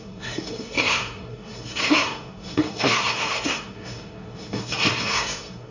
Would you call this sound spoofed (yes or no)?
yes